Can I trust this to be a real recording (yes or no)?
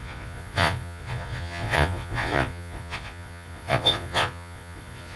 no